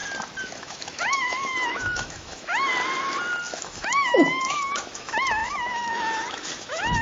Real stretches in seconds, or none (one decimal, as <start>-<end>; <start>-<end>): 0.0-0.6; 2.7-3.5